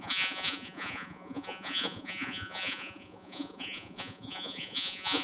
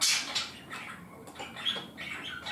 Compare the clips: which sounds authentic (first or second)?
second